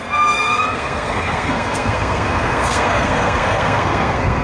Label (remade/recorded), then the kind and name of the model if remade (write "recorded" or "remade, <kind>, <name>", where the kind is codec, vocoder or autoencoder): remade, codec, SNAC